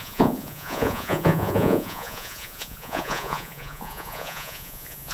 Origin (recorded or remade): remade